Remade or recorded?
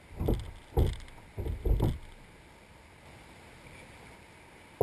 recorded